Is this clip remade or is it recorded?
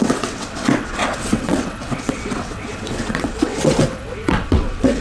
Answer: remade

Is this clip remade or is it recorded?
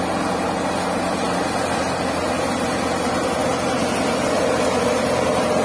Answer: recorded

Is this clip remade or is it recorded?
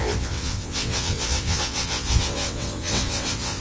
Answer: remade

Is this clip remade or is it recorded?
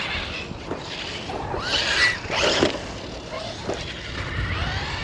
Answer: recorded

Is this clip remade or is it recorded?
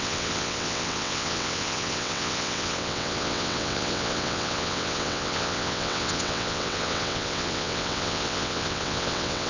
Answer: remade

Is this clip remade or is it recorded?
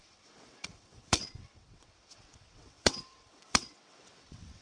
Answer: remade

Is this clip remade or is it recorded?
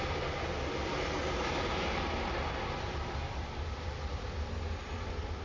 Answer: recorded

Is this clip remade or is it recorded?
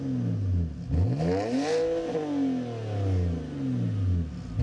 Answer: recorded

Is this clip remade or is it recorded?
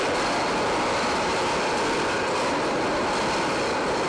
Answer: recorded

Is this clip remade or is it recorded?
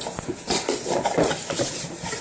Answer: recorded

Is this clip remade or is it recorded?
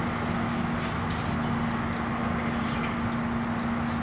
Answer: recorded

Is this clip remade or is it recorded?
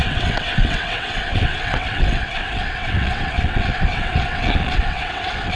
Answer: remade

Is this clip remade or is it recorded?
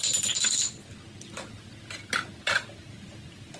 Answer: recorded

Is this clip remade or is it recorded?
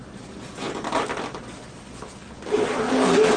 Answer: recorded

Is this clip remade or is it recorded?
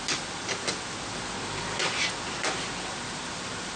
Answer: recorded